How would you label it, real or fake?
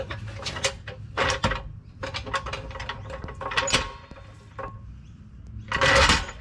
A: real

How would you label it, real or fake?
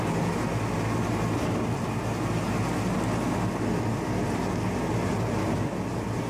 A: real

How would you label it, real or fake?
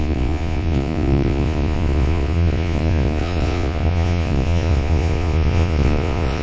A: fake